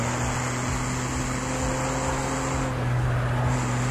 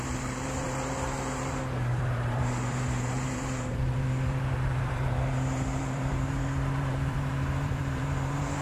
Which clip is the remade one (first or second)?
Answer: second